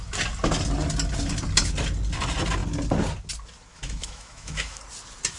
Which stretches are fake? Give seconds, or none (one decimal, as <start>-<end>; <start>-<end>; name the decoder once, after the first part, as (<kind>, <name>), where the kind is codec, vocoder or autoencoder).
3.7-4.8 (autoencoder, DAC-VAE)